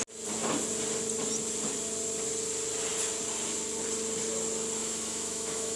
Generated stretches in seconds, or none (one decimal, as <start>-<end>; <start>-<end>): 4.8-5.8